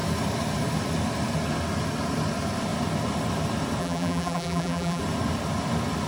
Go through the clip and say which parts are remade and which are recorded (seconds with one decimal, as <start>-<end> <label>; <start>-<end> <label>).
0.0-3.8 recorded; 3.8-5.0 remade; 5.0-6.1 recorded